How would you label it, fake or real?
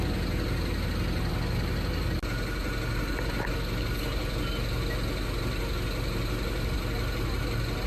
real